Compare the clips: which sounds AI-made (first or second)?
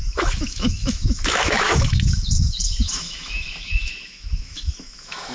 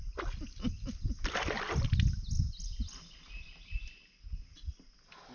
first